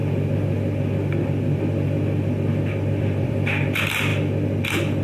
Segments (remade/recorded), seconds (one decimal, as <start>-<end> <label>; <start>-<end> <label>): 0.0-3.0 recorded; 3.0-4.1 remade; 4.1-5.0 recorded